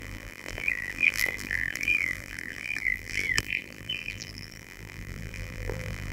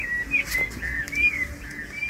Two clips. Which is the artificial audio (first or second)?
first